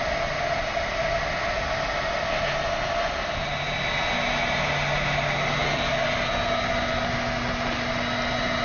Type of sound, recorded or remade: recorded